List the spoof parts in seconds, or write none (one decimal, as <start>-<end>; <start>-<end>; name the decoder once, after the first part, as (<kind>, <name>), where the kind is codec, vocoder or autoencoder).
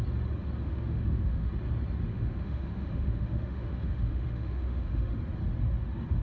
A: 0.7-1.5 (autoencoder, DAC-VAE); 2.1-5.2